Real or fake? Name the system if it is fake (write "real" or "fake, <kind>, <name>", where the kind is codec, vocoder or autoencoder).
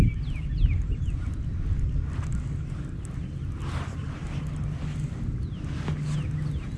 real